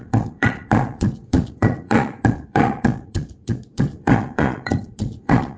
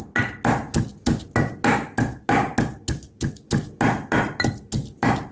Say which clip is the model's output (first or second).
first